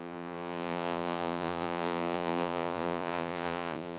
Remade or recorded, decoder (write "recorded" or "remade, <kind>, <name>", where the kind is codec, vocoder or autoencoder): remade, vocoder, Vocos